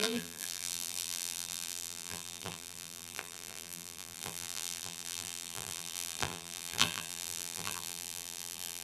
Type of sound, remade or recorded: remade